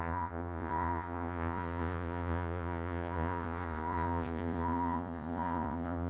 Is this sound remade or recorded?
remade